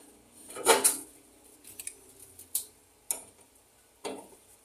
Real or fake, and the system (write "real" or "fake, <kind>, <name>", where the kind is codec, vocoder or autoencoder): real